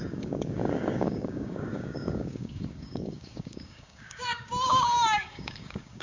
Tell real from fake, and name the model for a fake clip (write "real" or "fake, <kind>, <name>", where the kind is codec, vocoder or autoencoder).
fake, codec, DAC